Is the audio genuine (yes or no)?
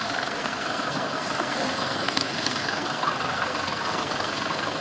no